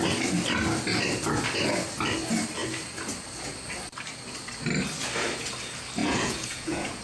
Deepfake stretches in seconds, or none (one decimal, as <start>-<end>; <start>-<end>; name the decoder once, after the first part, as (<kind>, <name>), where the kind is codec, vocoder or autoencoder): 6.0-7.0 (vocoder, Vocos)